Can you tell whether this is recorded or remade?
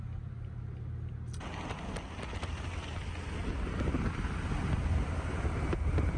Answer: recorded